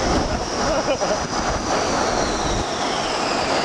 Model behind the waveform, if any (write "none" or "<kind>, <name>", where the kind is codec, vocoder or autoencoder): none